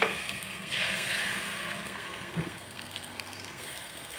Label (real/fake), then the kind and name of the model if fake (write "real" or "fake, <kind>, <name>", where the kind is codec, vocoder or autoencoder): fake, codec, SNAC